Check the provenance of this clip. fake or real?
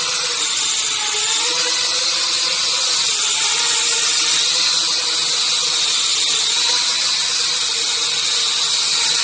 real